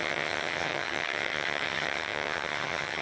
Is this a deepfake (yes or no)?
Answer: yes